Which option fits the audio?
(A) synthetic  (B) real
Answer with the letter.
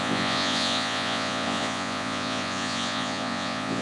A